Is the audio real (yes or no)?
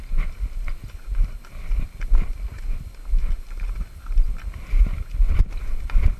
yes